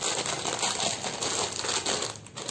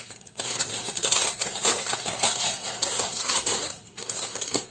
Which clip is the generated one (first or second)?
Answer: second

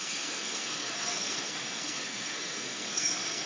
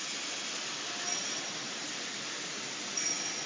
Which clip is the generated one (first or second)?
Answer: first